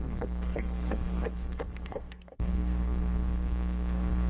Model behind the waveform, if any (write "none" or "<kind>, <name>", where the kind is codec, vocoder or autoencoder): codec, SNAC